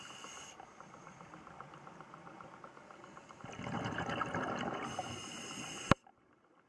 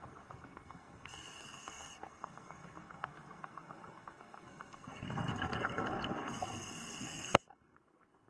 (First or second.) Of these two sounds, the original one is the first